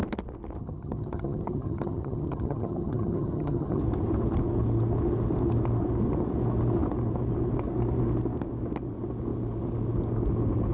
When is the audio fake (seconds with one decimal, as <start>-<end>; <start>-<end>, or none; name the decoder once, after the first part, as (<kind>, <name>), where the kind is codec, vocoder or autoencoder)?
0.6-3.8 (vocoder, HiFi-GAN)

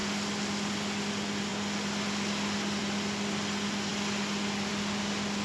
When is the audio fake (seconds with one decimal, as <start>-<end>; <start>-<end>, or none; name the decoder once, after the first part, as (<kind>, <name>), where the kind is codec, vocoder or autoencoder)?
none

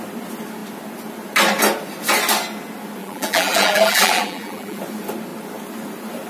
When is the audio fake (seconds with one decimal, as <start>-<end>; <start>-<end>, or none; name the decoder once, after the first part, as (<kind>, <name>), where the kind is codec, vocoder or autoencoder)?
3.0-4.8 (vocoder, BigVGAN v2)

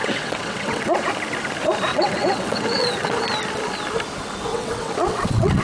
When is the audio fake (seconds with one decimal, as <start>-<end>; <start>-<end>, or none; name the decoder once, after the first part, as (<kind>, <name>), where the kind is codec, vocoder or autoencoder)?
0.0-1.1 (vocoder, WaveNeXt); 1.9-3.2; 4.5-5.6

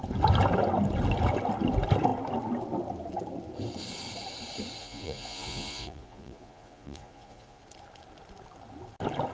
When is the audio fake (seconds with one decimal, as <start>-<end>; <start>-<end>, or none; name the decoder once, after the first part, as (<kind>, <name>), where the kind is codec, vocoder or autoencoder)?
4.8-7.6 (vocoder, Vocos)

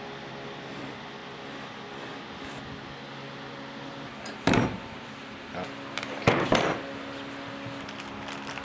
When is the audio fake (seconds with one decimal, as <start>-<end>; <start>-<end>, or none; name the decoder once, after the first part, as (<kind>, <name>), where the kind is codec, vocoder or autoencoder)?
none

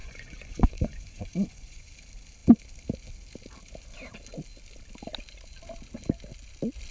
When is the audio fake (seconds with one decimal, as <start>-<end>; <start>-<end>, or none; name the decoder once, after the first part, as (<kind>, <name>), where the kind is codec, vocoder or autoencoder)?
0.0-1.9 (vocoder, Vocos)

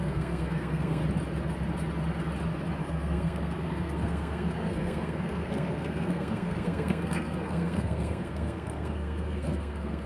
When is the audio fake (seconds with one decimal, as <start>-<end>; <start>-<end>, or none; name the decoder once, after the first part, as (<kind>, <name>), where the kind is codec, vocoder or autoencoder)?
0.0-1.0 (codec, SNAC); 2.8-10.1